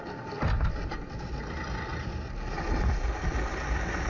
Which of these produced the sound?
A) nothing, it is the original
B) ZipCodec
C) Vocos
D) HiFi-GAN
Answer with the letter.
A